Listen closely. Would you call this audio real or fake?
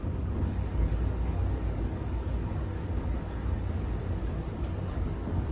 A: fake